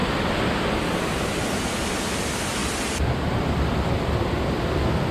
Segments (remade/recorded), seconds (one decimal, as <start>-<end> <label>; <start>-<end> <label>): 0.0-0.7 remade; 0.7-2.6 recorded; 2.6-3.9 remade; 3.9-5.1 recorded